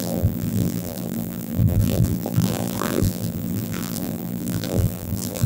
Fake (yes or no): yes